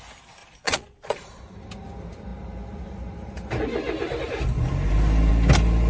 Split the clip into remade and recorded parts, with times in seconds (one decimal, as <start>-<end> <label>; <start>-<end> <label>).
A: 0.0-0.4 recorded; 0.4-1.4 remade; 1.4-5.9 recorded